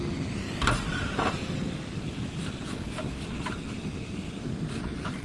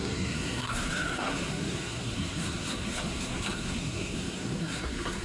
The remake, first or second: second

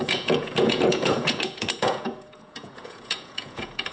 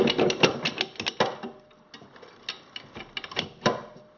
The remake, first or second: first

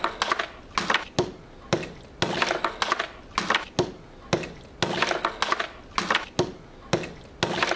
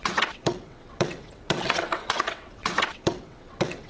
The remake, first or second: second